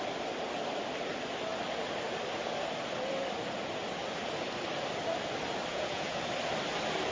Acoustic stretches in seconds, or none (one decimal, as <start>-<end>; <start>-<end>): 0.0-5.7; 6.2-7.1